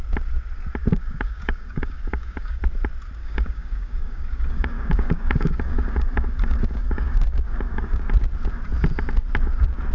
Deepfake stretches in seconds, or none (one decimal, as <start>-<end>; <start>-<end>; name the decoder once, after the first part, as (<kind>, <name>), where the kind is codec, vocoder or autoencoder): 0.8-2.6 (codec, DAC); 3.2-8.1